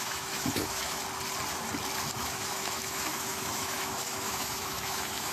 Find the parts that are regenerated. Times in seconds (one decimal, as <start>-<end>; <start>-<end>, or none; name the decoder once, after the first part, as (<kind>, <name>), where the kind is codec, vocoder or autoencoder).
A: 0.0-1.0 (autoencoder, DAC-VAE); 2.2-5.3